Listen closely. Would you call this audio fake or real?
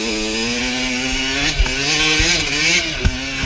real